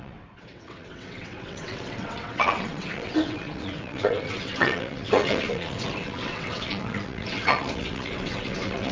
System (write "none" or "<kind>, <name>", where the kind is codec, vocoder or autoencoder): vocoder, WaveNeXt